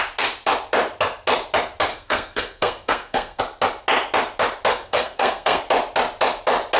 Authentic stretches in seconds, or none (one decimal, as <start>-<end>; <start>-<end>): 0.0-1.9; 3.4-4.7; 5.6-6.8